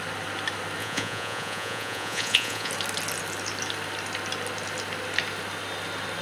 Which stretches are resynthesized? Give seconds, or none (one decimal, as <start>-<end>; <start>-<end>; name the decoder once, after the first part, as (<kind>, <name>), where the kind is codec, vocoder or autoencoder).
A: 0.8-2.7 (vocoder, Vocos)